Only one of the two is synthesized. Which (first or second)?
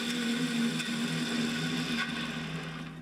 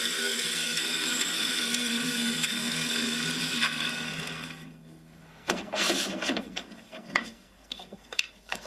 second